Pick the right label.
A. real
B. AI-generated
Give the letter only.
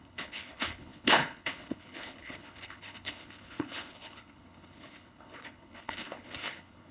B